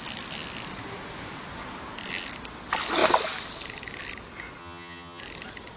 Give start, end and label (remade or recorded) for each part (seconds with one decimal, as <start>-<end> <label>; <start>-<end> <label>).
0.0-4.6 recorded; 4.6-5.2 remade; 5.2-5.8 recorded